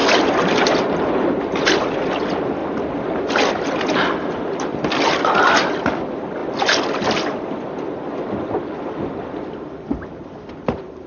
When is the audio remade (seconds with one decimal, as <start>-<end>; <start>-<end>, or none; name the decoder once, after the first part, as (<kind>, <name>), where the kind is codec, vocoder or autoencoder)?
none